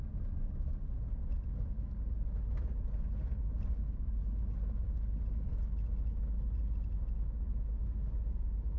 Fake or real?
real